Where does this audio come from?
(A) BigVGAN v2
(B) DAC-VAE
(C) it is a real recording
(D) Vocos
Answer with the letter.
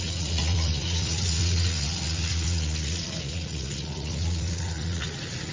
D